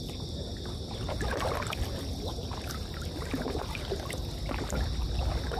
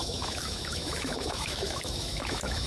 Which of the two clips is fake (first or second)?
second